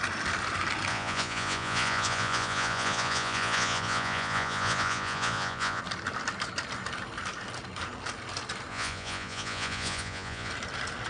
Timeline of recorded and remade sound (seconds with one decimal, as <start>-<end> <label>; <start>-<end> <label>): 0.0-0.9 recorded; 0.9-5.8 remade; 5.8-8.7 recorded; 8.7-10.5 remade; 10.5-11.1 recorded